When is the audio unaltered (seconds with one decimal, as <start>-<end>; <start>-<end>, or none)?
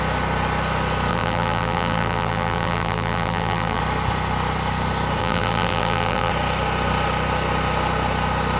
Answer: 0.0-1.1; 3.8-5.2; 6.3-8.6